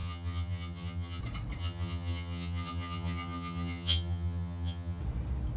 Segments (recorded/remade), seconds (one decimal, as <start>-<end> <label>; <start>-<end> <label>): 0.0-1.2 remade; 1.2-1.6 recorded; 1.6-5.0 remade; 5.0-5.6 recorded